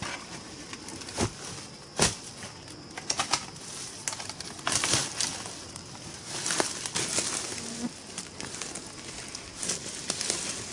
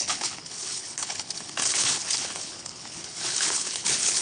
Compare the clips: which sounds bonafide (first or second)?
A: first